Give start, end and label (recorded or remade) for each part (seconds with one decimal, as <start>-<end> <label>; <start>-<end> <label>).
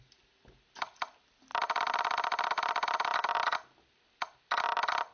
0.0-5.1 recorded